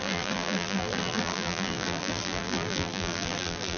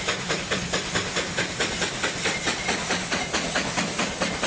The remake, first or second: first